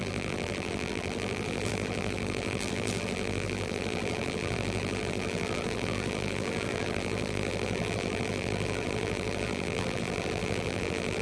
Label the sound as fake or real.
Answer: fake